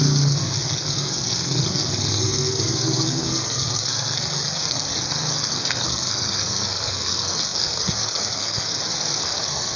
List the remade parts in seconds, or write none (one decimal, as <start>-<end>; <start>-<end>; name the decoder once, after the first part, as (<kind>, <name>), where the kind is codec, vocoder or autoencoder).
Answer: 0.0-9.8 (codec, SNAC)